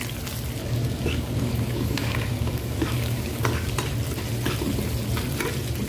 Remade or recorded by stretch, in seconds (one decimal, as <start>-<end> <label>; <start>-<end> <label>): 0.0-0.6 recorded; 0.6-3.7 remade; 3.7-5.9 recorded